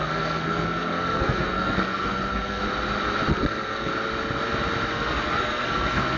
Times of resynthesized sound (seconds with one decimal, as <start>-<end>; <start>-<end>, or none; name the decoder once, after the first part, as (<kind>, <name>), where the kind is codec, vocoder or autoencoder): 0.0-2.6 (codec, SNAC); 3.3-3.9; 4.9-6.2